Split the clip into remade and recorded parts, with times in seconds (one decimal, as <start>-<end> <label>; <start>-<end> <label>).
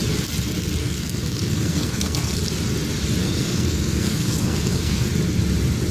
0.0-0.8 recorded; 0.8-2.4 remade; 2.4-3.2 recorded; 3.2-5.1 remade; 5.1-5.9 recorded